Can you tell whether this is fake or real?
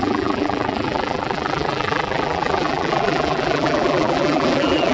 fake